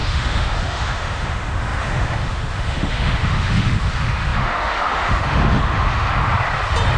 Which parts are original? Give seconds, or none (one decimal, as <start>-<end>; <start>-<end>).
6.3-7.0